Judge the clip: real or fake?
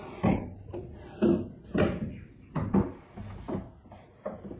real